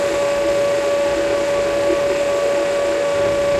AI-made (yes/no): yes